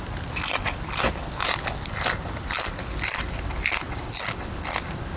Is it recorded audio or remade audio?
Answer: recorded